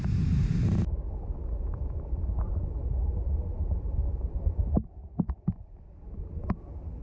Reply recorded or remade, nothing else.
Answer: recorded